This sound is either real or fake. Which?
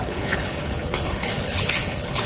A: fake